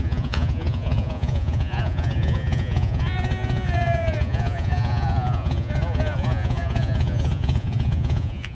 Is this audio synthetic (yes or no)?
yes